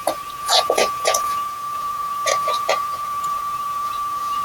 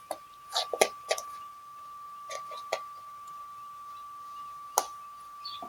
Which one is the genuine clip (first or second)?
second